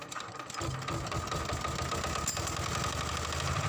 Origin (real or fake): real